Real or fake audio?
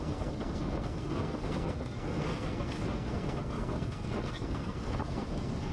fake